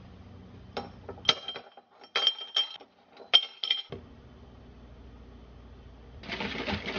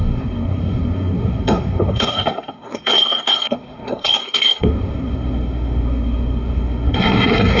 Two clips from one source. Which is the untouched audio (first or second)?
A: first